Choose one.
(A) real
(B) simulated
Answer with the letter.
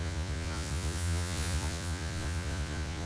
B